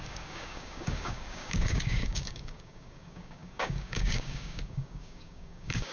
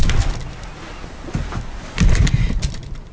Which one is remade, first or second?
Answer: first